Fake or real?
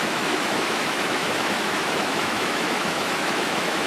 fake